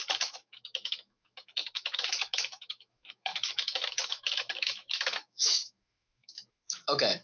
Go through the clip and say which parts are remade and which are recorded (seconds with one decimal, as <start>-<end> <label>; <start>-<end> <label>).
0.0-7.2 remade